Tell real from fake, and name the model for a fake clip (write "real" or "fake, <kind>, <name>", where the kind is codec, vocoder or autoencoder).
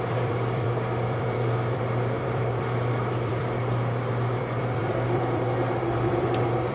fake, vocoder, BigVGAN v2